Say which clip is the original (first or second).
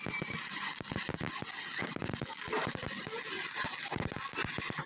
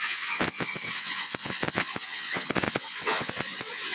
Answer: first